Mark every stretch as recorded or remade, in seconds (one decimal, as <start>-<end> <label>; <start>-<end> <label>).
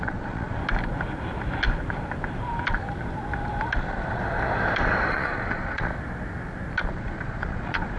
0.0-0.6 remade; 0.6-3.8 recorded; 3.8-4.2 remade; 4.2-5.1 recorded; 5.1-5.9 remade; 5.9-6.9 recorded; 6.9-8.0 remade